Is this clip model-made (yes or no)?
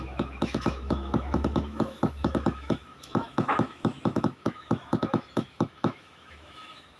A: yes